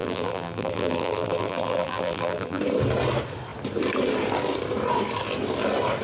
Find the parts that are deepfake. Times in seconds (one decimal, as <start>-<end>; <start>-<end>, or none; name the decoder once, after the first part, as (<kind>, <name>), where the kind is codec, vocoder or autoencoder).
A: 0.0-2.6 (vocoder, BigVGAN v2)